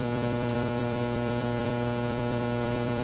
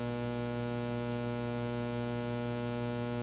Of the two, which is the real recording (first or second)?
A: second